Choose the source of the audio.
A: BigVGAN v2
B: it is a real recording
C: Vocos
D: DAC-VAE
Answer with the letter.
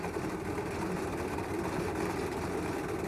A